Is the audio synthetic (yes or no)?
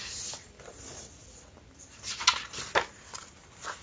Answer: no